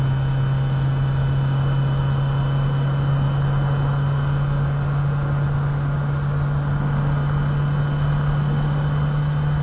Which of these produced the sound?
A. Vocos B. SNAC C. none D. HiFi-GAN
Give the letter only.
C